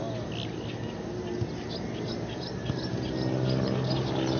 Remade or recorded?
recorded